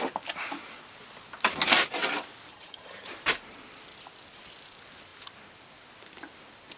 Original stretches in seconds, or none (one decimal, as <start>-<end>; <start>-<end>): 0.0-2.5; 3.1-6.8